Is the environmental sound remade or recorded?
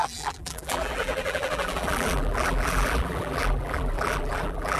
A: remade